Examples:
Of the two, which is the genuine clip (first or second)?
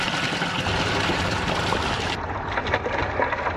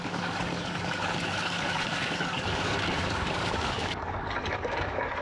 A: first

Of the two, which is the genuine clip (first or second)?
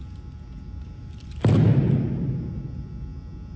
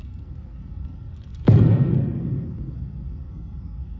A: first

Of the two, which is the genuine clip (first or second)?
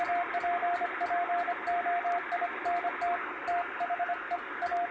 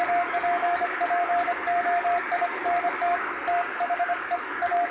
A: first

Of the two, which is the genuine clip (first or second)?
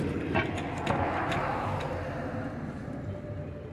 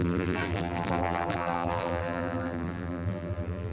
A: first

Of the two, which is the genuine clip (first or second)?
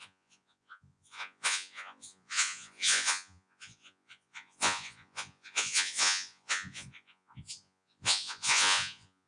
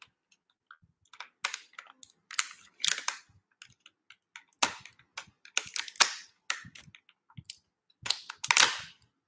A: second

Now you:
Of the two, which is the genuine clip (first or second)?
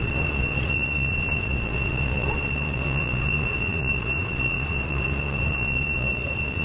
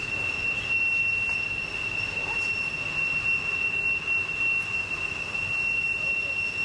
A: second